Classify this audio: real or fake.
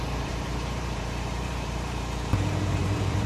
fake